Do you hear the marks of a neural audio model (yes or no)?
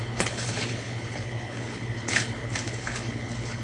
yes